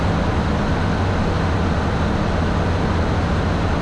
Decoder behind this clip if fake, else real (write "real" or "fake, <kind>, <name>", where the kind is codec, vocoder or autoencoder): real